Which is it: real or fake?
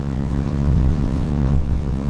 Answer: fake